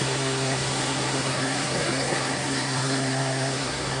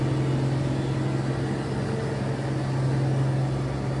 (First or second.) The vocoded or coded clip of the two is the first